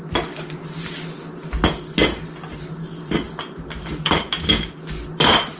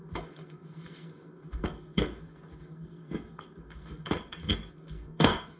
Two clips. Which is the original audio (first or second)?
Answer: first